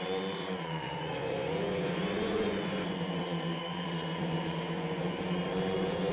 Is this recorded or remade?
remade